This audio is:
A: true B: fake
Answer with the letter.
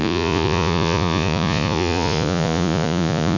B